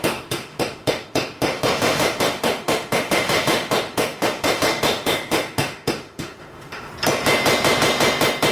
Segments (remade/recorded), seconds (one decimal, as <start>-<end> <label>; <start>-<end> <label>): 0.0-6.9 remade; 6.9-8.5 recorded